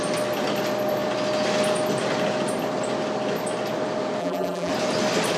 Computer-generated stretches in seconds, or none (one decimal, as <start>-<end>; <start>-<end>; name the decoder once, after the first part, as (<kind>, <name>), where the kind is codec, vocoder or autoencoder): 4.2-4.7 (vocoder, BigVGAN v2)